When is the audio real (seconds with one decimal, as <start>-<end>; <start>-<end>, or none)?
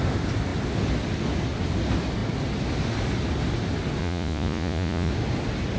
0.0-4.0; 5.1-5.8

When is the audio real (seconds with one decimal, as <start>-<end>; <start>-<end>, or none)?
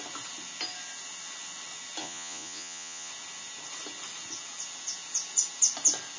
0.0-2.0; 3.1-6.2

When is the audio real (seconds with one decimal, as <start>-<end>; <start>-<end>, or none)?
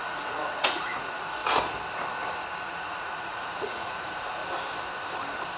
1.4-2.6; 4.4-5.6